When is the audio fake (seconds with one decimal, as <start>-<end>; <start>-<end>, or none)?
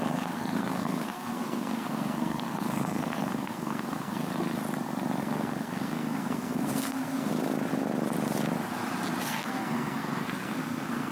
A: 0.0-4.3; 5.2-7.3; 9.2-11.1